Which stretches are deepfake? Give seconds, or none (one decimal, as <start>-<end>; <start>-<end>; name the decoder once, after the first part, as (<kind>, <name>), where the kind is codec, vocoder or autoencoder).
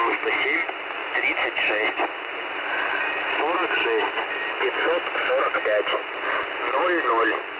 none